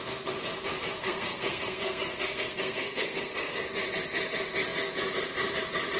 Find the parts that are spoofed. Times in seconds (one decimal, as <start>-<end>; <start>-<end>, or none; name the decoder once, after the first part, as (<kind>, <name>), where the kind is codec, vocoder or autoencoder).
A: 1.0-3.6 (codec, SNAC)